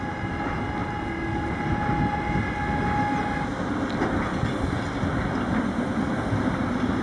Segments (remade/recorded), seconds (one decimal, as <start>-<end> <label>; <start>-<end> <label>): 0.0-7.0 recorded